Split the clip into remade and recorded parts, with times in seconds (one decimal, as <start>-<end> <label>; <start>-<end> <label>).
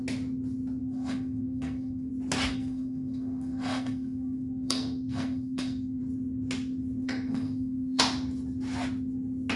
0.0-0.8 recorded; 0.8-2.1 remade; 2.1-2.5 recorded; 2.5-6.0 remade; 6.0-7.0 recorded; 7.0-8.0 remade; 8.0-9.6 recorded